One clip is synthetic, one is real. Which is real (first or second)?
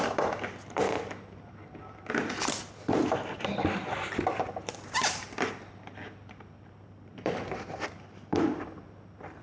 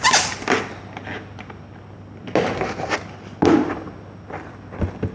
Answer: second